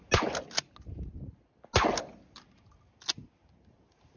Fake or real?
real